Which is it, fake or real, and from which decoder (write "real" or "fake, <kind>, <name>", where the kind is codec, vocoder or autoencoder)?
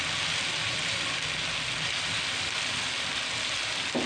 real